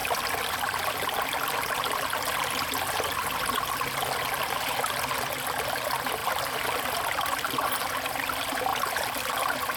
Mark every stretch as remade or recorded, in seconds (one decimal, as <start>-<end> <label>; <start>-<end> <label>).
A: 0.0-0.7 remade; 0.7-6.2 recorded; 6.2-6.9 remade; 6.9-8.7 recorded; 8.7-9.8 remade